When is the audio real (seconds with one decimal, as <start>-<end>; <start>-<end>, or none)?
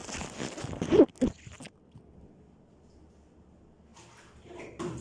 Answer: 0.0-5.0